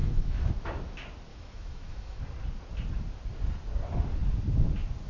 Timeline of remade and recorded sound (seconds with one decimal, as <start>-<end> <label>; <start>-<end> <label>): 0.0-0.5 remade; 0.5-1.3 recorded; 1.3-2.2 remade; 2.2-5.1 recorded